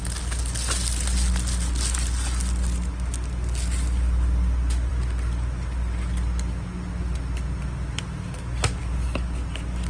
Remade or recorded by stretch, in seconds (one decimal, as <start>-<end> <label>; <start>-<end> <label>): 0.0-9.9 recorded